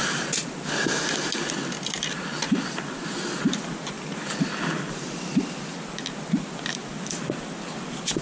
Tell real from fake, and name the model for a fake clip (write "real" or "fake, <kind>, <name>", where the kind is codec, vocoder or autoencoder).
real